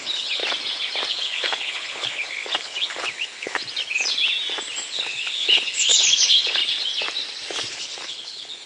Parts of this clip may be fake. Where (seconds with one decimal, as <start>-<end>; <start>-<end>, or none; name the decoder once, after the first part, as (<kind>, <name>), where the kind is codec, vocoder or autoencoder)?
0.0-0.4 (codec, HILCodec); 1.1-3.6; 4.9-6.6; 7.7-8.7